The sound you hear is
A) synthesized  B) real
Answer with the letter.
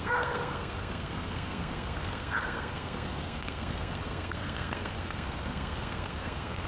A